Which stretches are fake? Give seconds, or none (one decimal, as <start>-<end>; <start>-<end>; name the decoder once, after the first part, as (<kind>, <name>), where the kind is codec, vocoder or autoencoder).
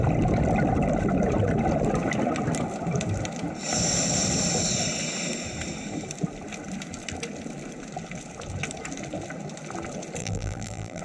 10.2-11.0 (vocoder, BigVGAN v2)